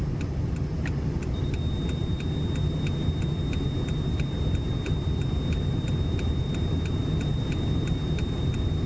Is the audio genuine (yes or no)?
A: yes